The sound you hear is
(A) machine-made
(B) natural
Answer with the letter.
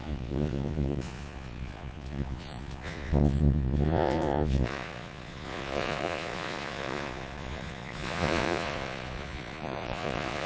A